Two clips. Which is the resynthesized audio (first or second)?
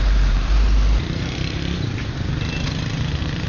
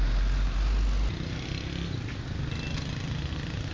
first